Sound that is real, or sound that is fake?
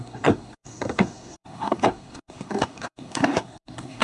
fake